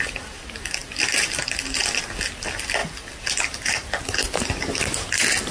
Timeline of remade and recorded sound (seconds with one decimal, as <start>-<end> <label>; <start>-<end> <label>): 0.0-5.5 recorded

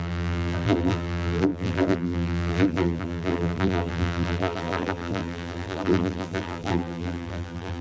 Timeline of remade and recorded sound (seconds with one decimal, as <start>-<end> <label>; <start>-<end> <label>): 0.0-7.8 remade

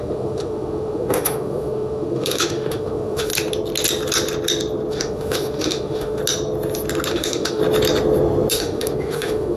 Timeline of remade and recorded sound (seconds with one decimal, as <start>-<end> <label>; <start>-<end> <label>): 0.0-3.3 remade; 3.3-4.9 recorded; 4.9-6.2 remade; 6.2-7.1 recorded; 7.1-7.6 remade; 7.6-8.5 recorded; 8.5-9.6 remade

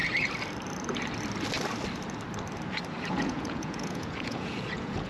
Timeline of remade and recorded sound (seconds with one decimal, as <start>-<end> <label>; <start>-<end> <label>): 0.0-3.1 recorded; 3.1-5.1 remade

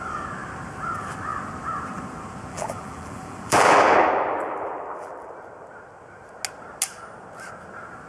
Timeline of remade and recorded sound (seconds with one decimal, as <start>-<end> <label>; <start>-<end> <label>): 0.0-2.5 recorded; 2.5-5.3 remade; 5.3-8.1 recorded